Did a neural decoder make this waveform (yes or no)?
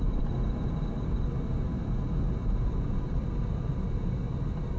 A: no